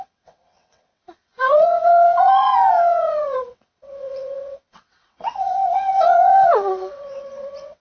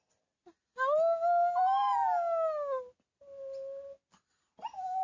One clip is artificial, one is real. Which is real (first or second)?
second